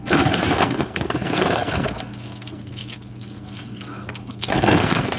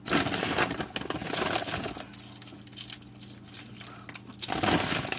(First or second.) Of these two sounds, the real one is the second